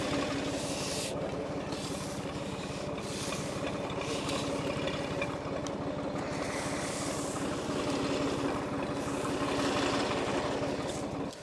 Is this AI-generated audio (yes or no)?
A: no